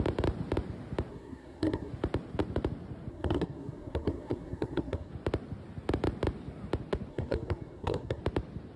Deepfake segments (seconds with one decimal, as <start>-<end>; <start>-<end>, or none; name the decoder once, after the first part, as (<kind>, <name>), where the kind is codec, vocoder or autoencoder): 1.1-1.9 (codec, SNAC); 3.1-5.1; 7.1-8.2

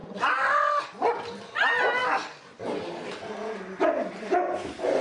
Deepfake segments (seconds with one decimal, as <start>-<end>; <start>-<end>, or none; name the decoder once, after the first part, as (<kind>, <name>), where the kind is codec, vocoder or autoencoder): none

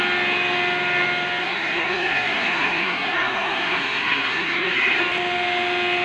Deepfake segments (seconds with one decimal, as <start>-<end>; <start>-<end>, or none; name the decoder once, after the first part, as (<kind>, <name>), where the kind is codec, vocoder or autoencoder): 1.4-5.0 (codec, SNAC)

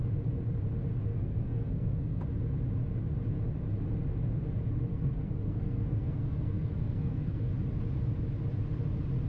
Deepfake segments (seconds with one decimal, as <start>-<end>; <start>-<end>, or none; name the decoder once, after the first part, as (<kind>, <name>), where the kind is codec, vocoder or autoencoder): 1.1-2.2 (codec, SNAC); 4.9-7.5

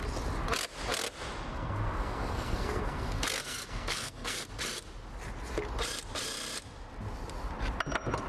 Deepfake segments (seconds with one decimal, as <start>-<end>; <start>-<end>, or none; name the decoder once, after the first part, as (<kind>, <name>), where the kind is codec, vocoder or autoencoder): 1.5-4.5 (codec, SNAC)

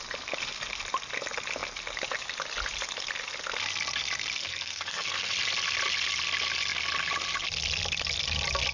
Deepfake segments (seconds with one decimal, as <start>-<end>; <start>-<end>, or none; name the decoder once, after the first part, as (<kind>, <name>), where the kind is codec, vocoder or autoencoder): 4.4-5.3 (codec, SNAC)

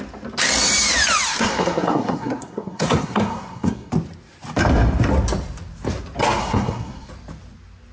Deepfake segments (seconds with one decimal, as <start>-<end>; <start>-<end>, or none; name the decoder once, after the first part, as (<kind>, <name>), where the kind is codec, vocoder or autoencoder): 1.3-3.9 (codec, SNAC); 6.4-7.1

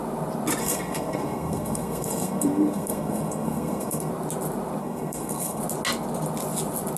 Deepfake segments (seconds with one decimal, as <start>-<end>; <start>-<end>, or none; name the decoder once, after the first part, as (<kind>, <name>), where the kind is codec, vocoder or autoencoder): 0.6-4.1 (codec, SNAC); 4.8-5.6